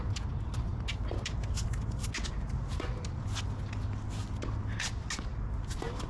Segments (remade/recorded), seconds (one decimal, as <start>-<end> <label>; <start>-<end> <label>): 0.0-0.7 recorded; 0.7-1.4 remade; 1.4-6.1 recorded